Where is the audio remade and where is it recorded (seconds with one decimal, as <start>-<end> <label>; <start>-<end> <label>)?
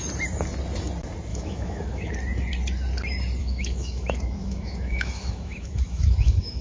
0.0-1.3 recorded; 1.3-2.1 remade; 2.1-3.4 recorded; 3.4-6.6 remade